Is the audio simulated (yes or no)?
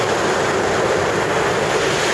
no